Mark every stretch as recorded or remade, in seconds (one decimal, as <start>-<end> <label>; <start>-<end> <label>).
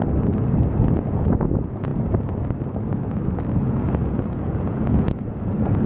0.0-1.0 recorded; 1.0-1.9 remade; 1.9-3.5 recorded; 3.5-5.9 remade